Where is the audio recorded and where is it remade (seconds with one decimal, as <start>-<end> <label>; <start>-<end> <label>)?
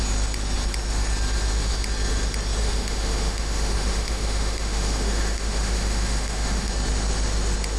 0.0-2.6 recorded; 2.6-6.7 remade; 6.7-7.8 recorded